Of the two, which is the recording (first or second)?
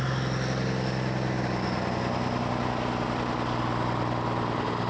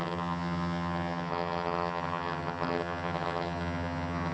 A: first